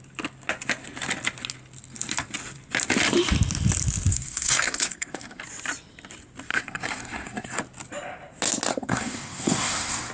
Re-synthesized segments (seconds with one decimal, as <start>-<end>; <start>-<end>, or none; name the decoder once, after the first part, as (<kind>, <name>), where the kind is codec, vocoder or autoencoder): 4.1-5.4 (codec, SNAC); 6.5-7.6; 8.7-10.1